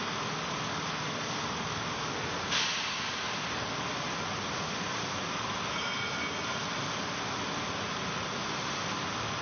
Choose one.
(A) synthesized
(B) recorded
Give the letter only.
B